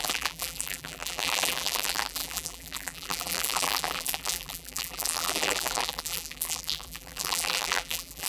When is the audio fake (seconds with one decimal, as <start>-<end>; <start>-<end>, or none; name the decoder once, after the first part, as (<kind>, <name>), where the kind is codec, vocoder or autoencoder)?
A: 0.0-8.3 (vocoder, BigVGAN v2)